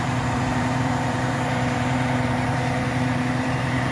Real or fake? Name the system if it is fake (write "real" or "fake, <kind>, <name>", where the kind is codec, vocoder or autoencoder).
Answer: fake, vocoder, BigVGAN v2